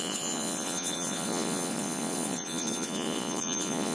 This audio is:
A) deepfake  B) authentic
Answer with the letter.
A